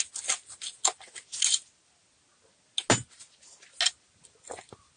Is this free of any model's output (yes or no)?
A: yes